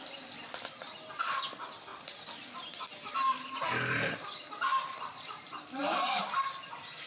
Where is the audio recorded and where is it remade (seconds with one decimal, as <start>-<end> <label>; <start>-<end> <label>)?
0.0-1.9 recorded; 1.9-6.2 remade; 6.2-7.1 recorded